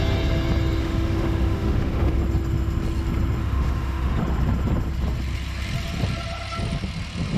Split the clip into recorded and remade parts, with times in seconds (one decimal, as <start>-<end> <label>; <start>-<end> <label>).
0.0-0.8 recorded; 0.8-2.2 remade; 2.2-3.4 recorded; 3.4-4.2 remade; 4.2-7.4 recorded